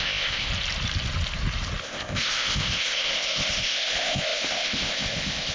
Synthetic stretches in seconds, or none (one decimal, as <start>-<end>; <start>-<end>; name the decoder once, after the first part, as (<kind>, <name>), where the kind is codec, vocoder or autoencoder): 0.0-0.5 (codec, ZipCodec); 1.8-5.5